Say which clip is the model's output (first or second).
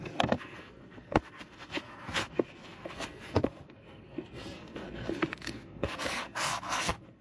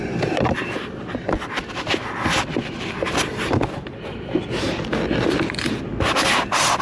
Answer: first